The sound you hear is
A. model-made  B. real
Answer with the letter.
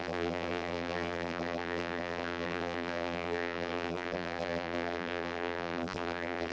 A